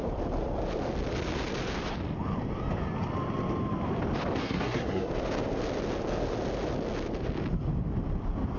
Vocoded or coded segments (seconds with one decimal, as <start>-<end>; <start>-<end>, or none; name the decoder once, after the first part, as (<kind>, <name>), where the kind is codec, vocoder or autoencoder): 4.4-5.1 (codec, SNAC)